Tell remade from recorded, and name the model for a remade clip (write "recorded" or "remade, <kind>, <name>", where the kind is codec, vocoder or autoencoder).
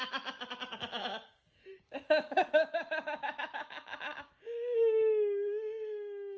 remade, autoencoder, DAC-VAE